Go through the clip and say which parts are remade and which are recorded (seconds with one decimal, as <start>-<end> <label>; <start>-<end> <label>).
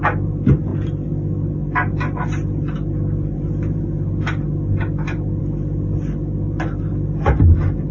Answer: 0.0-7.9 recorded